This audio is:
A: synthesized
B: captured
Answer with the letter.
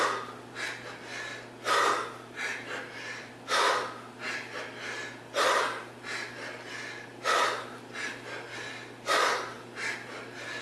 B